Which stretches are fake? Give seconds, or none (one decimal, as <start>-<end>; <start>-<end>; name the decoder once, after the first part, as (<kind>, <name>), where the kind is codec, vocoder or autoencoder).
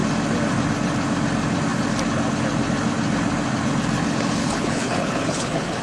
4.4-5.8 (codec, HILCodec)